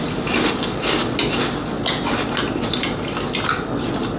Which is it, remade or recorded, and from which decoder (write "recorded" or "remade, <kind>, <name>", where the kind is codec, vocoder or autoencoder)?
recorded